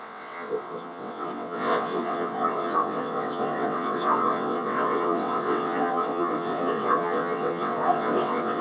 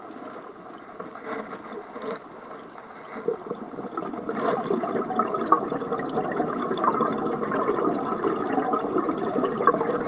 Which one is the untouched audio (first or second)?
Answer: second